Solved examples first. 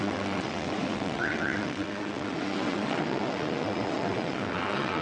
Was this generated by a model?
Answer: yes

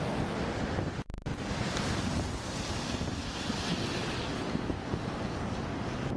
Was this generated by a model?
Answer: no